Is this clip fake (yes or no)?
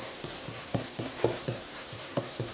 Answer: yes